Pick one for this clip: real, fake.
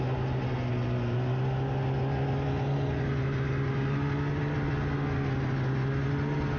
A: real